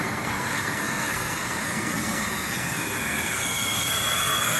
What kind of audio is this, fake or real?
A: fake